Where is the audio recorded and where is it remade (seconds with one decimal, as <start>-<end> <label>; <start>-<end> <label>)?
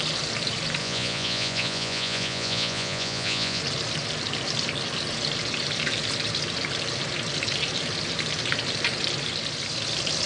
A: 0.0-0.8 recorded; 0.8-3.6 remade; 3.6-10.3 recorded